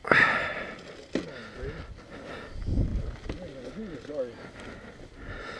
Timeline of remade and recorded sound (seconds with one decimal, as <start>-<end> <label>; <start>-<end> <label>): 0.0-0.6 remade; 0.6-5.6 recorded